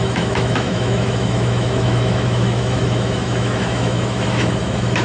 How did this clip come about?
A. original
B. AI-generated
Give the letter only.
B